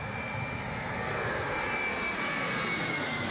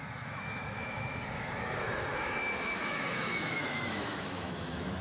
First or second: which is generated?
second